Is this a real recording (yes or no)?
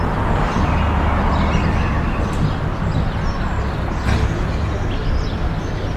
yes